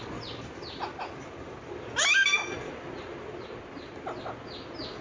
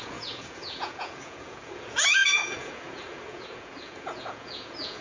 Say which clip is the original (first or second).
first